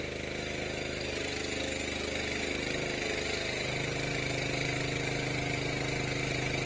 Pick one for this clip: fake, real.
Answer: real